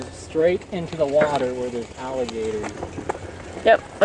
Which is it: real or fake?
real